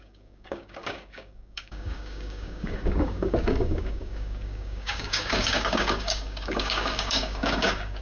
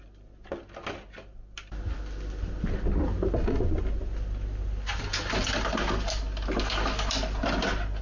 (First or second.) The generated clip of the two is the first